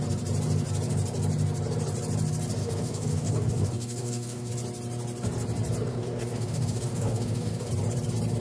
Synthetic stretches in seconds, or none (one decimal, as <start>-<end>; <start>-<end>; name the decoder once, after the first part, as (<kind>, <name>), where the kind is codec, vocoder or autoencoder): 2.6-4.5 (codec, DAC); 5.9-7.7